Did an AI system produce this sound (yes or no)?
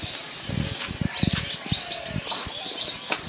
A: no